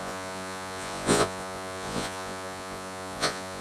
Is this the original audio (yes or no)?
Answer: no